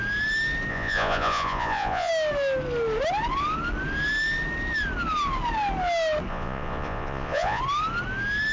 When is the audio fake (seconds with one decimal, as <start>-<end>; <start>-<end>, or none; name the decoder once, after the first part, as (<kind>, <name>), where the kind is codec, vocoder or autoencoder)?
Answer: 0.7-2.1 (vocoder, Vocos); 6.3-7.6